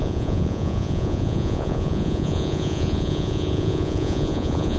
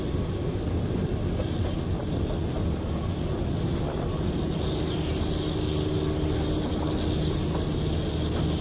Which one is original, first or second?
second